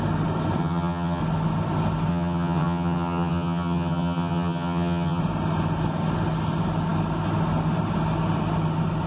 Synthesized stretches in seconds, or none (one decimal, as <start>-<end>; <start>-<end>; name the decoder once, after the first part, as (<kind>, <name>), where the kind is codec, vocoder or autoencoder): 0.6-1.2 (vocoder, HiFi-GAN); 2.1-5.2